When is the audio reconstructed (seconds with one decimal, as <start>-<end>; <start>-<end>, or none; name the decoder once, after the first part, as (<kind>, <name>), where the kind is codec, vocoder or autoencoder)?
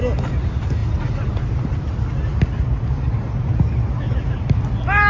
none